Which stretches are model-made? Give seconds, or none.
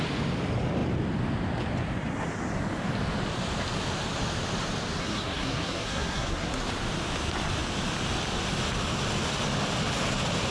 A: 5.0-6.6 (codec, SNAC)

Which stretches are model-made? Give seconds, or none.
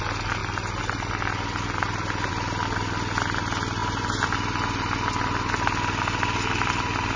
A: none